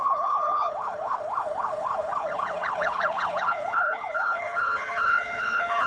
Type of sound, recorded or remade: remade